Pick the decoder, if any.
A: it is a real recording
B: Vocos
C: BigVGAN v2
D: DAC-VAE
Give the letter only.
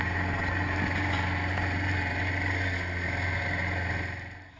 A